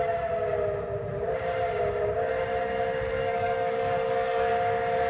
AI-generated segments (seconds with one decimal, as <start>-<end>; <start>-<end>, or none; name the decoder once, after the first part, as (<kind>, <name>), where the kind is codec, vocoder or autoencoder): 3.2-4.5 (codec, DAC)